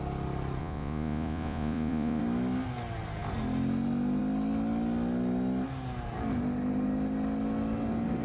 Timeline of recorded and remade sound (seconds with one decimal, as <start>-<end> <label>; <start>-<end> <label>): 0.0-0.6 recorded; 0.6-2.2 remade; 2.2-8.2 recorded